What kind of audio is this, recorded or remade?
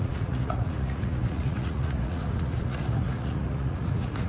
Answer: remade